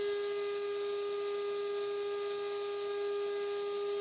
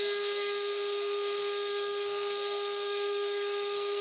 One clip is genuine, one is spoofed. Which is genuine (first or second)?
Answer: first